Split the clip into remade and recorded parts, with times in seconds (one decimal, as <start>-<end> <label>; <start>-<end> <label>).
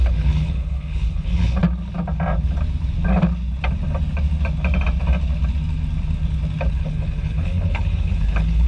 0.0-1.6 remade; 1.6-6.7 recorded; 6.7-8.7 remade